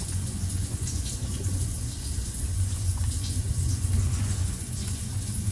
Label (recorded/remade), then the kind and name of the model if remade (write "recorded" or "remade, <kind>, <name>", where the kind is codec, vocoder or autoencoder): remade, vocoder, Vocos